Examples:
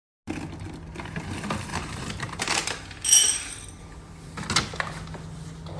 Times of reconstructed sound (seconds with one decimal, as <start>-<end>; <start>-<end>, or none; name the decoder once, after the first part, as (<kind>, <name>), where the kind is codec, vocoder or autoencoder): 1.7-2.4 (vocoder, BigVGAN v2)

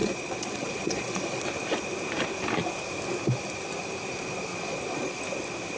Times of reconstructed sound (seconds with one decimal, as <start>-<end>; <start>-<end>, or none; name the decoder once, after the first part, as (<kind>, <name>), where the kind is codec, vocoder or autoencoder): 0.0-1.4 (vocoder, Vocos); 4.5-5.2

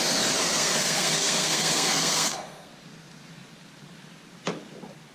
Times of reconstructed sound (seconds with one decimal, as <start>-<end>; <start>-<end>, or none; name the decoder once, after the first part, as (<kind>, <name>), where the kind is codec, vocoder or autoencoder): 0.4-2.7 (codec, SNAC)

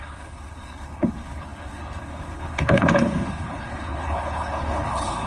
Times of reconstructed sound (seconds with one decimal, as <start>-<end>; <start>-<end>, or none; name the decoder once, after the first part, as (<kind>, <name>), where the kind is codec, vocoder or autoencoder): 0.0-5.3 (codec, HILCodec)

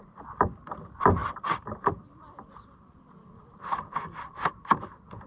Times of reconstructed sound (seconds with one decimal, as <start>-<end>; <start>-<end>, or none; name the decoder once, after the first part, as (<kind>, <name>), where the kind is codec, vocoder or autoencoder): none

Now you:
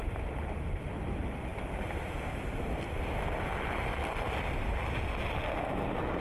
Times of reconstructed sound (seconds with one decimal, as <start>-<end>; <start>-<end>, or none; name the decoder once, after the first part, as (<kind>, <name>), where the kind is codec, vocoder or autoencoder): 0.0-6.2 (vocoder, BigVGAN v2)

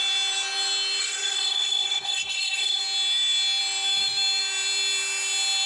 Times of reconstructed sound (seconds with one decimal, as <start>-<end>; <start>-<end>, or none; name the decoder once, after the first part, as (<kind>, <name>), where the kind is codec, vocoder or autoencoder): 1.0-2.8 (codec, SNAC)